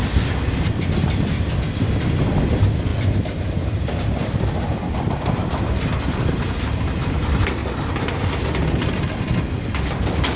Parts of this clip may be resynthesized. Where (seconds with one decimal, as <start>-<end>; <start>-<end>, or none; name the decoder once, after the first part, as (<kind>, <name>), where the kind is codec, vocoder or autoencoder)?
0.0-7.6 (vocoder, BigVGAN v2); 8.8-10.4